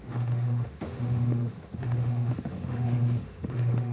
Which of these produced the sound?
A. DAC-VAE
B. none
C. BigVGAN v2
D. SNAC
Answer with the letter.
A